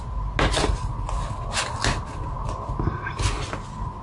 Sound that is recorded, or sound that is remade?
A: recorded